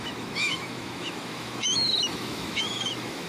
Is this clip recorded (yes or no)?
no